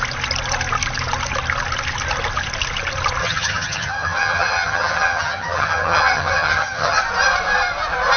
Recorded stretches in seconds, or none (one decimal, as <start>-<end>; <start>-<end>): 0.0-3.2; 7.0-8.2

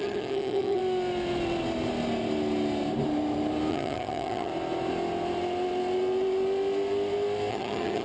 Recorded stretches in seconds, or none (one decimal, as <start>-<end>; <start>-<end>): 0.8-3.7; 4.5-7.5

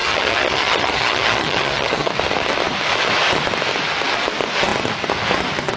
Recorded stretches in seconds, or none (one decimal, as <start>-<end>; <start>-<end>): 2.1-5.8

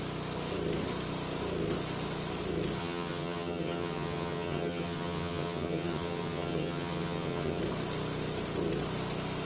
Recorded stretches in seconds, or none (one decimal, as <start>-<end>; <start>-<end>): 0.0-2.8; 7.6-9.5

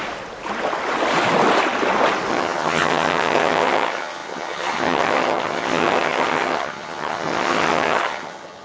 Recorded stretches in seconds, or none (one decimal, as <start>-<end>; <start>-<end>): 0.0-2.3

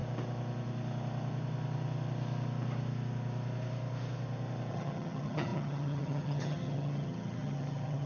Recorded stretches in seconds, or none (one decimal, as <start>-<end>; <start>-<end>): 0.0-4.7